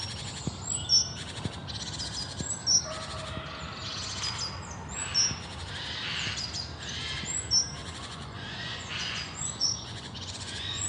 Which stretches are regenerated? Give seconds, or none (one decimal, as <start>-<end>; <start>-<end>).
7.8-10.9